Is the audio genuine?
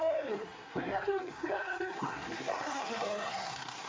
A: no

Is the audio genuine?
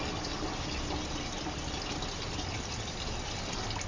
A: yes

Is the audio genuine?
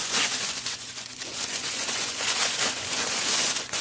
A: no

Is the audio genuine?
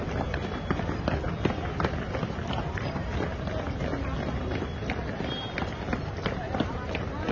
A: yes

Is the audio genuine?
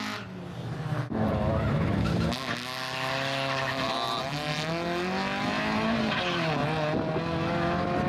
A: yes